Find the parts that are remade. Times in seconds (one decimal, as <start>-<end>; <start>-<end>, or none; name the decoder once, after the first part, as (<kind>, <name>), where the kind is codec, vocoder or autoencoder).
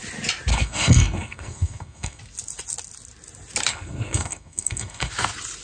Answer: 0.5-2.2 (codec, SNAC); 3.7-5.1